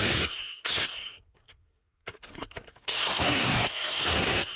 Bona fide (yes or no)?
no